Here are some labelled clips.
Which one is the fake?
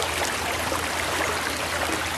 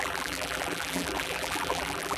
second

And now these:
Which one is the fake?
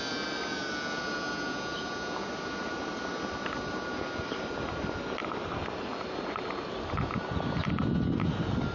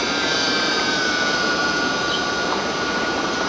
second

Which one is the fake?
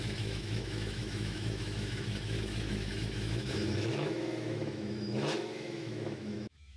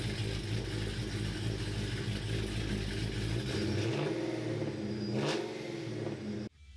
first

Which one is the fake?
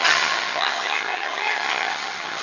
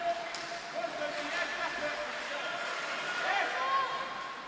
first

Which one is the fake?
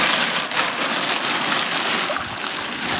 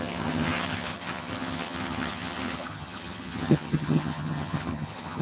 second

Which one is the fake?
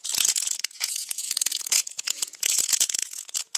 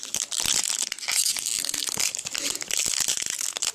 first